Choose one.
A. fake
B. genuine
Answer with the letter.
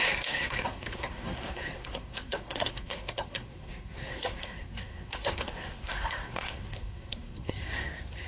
A